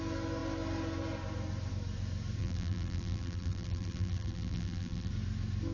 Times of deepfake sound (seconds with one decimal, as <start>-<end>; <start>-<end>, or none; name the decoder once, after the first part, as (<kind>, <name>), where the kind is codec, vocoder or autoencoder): 2.4-5.1 (vocoder, BigVGAN v2)